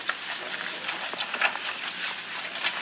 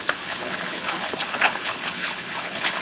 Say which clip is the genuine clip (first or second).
first